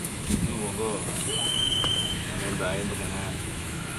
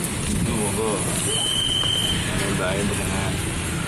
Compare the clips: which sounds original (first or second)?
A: second